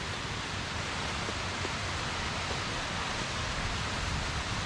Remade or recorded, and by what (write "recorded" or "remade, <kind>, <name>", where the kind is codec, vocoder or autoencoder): recorded